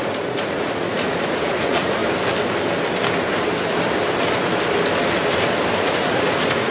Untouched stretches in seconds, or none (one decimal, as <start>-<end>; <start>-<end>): 2.0-5.8